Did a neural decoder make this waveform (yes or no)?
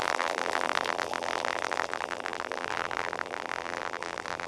yes